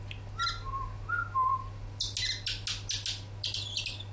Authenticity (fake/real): real